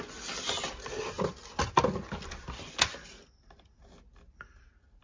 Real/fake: real